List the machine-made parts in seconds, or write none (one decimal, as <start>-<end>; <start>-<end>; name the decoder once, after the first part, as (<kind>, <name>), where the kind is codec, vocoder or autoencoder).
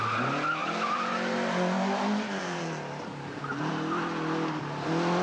0.6-3.7 (vocoder, BigVGAN v2)